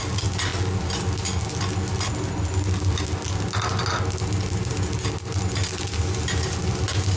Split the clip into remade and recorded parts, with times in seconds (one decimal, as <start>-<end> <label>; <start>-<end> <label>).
0.0-7.2 recorded